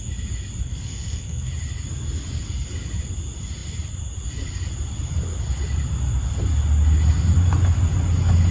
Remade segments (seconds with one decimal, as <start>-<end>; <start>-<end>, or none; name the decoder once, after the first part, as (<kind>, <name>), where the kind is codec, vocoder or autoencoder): 0.6-1.5 (codec, SNAC)